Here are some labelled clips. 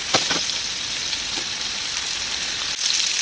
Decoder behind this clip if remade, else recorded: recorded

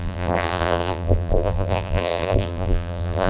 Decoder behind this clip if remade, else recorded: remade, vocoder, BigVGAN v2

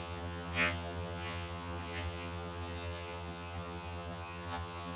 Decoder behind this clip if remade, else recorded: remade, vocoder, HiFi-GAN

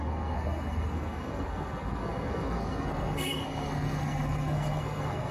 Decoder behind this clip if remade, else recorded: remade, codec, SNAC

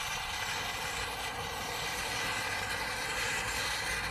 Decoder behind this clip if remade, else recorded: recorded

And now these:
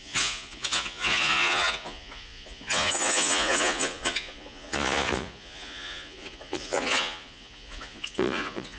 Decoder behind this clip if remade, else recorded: remade, vocoder, Vocos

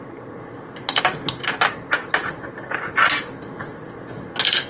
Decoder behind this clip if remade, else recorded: recorded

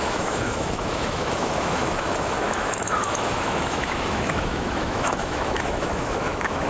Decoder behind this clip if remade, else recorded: remade, autoencoder, DAC-VAE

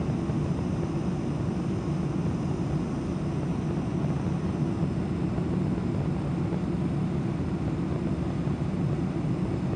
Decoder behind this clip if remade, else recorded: recorded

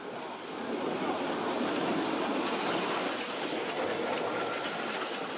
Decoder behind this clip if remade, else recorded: recorded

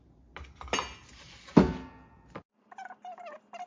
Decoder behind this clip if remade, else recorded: recorded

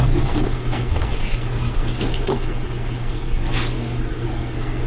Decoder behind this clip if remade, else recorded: remade, codec, SNAC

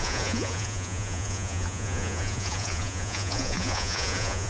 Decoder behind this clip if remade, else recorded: remade, vocoder, Vocos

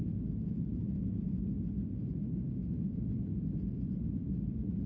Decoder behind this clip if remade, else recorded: recorded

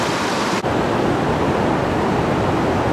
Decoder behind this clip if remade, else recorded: recorded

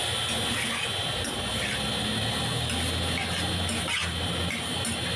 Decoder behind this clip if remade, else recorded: recorded